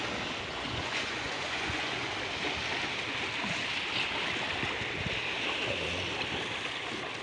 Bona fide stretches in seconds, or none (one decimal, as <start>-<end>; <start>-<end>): 0.0-0.5; 2.1-7.2